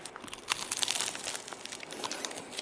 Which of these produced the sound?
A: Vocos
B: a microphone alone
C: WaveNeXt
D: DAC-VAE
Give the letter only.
B